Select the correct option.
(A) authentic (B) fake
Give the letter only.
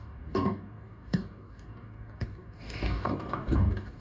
B